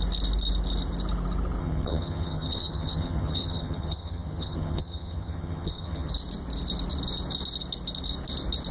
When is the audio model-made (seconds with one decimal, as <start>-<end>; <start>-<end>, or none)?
1.6-6.1